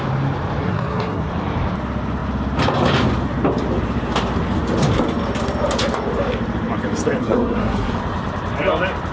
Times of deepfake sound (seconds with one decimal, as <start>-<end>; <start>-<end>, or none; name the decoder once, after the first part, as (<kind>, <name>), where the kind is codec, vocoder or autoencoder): 0.6-1.3 (codec, SNAC); 7.2-7.9